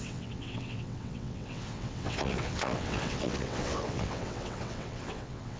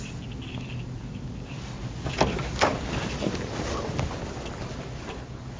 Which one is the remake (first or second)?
first